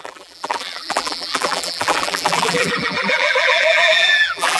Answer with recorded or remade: remade